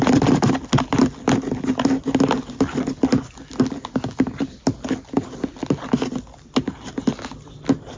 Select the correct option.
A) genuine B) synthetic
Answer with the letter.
A